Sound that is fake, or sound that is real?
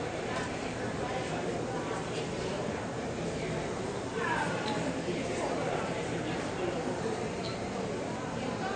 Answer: fake